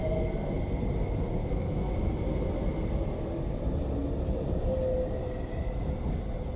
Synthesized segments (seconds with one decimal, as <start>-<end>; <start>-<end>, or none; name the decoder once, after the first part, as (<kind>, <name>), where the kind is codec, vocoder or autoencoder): 1.4-2.1 (autoencoder, DAC-VAE)